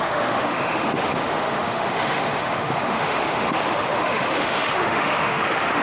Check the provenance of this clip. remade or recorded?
remade